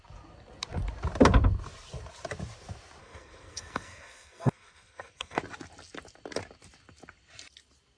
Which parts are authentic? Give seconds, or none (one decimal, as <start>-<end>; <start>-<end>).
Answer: 0.0-3.0; 5.4-8.0